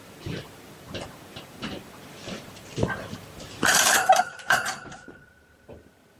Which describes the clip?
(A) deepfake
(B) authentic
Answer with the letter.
A